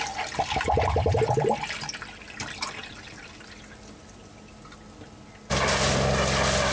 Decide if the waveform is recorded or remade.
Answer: recorded